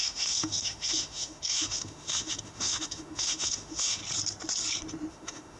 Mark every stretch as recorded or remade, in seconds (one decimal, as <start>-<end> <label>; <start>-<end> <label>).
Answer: 0.0-4.0 remade; 4.0-5.1 recorded; 5.1-5.6 remade